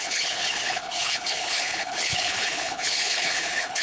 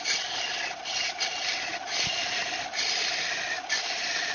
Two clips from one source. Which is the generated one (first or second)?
first